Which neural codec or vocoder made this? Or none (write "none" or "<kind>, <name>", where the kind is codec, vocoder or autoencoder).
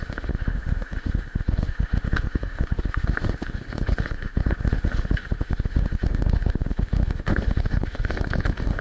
autoencoder, DAC-VAE